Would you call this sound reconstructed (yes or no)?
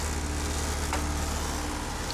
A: no